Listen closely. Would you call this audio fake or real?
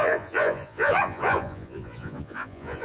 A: fake